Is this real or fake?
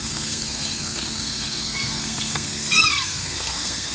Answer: fake